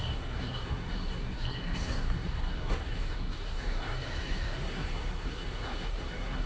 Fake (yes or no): yes